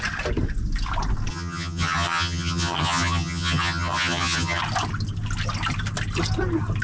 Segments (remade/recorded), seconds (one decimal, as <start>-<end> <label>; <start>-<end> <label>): 0.0-1.3 recorded; 1.3-4.6 remade; 4.6-6.8 recorded